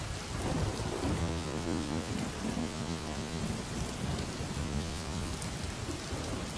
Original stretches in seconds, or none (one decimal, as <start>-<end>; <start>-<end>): 0.0-1.2; 2.1-2.6; 3.4-4.6; 5.3-6.6